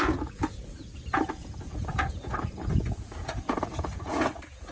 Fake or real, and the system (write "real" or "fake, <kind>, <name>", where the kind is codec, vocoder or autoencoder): fake, vocoder, Vocos